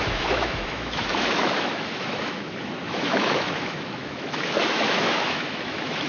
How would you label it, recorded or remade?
remade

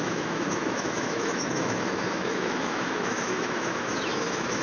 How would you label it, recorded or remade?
remade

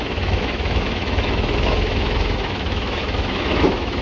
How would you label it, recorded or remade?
remade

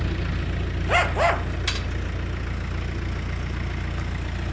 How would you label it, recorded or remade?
recorded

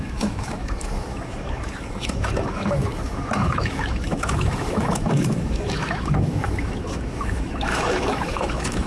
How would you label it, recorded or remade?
remade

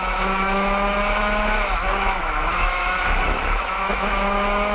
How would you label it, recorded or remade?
remade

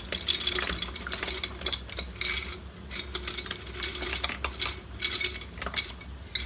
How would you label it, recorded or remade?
recorded